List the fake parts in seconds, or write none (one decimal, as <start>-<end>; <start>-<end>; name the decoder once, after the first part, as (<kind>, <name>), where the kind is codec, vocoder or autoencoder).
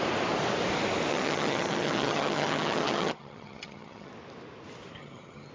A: 1.1-4.1 (vocoder, HiFi-GAN); 5.0-5.5